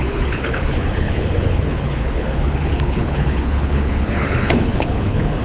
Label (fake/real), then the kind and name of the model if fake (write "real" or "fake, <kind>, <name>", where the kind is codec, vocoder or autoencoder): fake, codec, HILCodec